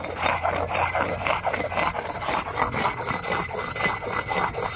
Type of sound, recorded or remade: recorded